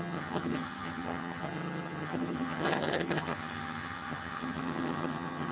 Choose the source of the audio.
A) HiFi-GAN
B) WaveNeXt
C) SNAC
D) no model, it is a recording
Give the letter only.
A